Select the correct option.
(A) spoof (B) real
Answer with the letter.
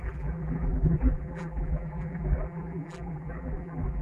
A